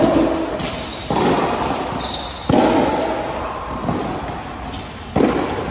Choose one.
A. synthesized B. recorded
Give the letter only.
B